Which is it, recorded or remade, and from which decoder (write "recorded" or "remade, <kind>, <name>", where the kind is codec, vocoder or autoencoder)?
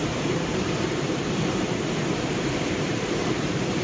remade, vocoder, BigVGAN v2